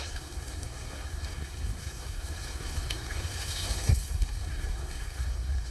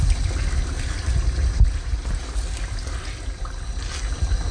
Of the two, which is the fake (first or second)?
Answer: first